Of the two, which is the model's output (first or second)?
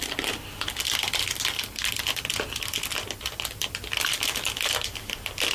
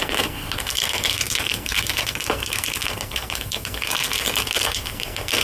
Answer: second